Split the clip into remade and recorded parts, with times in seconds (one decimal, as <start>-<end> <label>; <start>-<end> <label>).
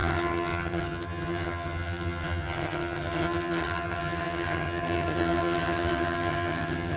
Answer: 0.0-7.0 remade